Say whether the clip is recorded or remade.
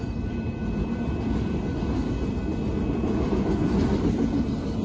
remade